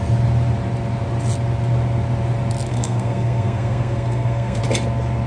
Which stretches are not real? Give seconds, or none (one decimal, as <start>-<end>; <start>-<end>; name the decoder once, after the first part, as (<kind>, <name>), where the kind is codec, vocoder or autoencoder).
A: 2.7-4.6 (codec, SNAC)